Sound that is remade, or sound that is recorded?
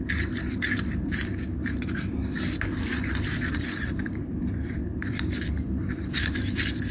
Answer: remade